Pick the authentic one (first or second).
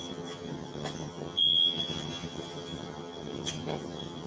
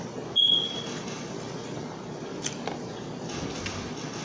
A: second